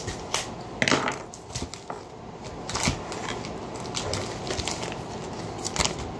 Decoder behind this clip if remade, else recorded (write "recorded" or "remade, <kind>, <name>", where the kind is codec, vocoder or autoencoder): recorded